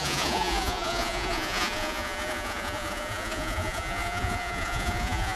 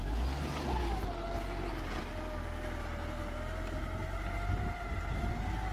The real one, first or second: second